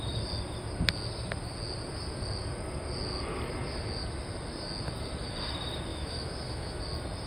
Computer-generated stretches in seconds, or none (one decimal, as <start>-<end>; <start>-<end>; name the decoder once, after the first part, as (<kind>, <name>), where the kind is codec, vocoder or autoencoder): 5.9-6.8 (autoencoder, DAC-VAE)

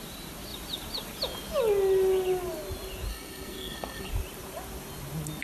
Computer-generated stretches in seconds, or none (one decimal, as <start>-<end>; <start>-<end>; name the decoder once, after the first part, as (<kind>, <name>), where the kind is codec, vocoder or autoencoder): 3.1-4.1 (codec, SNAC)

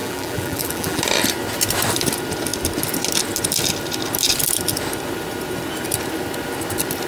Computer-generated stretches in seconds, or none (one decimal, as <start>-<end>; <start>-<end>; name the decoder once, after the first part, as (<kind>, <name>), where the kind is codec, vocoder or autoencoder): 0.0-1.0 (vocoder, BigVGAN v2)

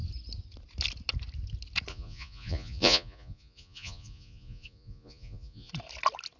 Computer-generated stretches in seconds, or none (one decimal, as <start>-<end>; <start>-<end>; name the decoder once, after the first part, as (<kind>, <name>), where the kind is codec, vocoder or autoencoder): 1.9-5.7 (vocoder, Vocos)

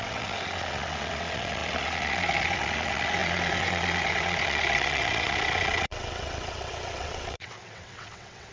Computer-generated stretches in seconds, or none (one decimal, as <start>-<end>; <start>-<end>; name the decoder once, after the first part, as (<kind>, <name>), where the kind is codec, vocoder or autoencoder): 0.0-8.5 (vocoder, WaveNeXt)

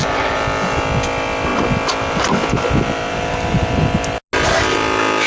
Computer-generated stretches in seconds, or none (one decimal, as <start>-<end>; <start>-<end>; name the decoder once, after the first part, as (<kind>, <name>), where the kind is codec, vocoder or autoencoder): none